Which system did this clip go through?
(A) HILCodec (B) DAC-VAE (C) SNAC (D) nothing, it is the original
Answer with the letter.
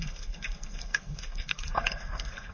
C